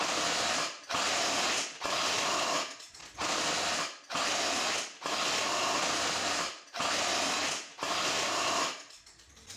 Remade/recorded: recorded